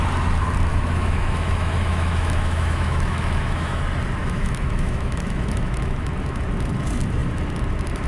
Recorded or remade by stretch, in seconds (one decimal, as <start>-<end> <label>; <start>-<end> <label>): 0.0-0.7 recorded; 0.7-3.8 remade; 3.8-4.2 recorded; 4.2-6.1 remade; 6.1-8.1 recorded